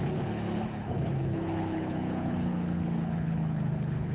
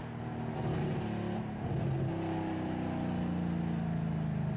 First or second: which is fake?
first